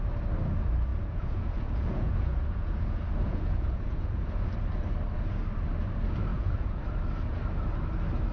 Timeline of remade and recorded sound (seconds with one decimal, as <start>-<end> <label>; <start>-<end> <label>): 0.0-0.9 recorded; 0.9-4.5 remade; 4.5-6.3 recorded; 6.3-6.8 remade; 6.8-8.3 recorded